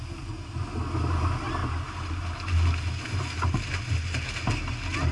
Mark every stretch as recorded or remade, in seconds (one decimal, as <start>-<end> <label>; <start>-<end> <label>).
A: 0.0-5.1 recorded